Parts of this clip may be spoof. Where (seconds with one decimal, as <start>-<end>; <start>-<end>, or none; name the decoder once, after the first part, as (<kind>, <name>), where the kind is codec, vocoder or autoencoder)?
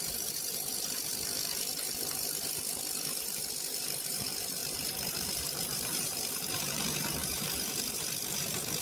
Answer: 0.0-1.1 (vocoder, BigVGAN v2); 3.2-8.8